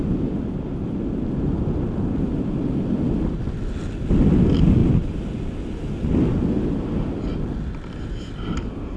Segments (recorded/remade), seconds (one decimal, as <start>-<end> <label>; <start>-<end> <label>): 0.0-9.0 recorded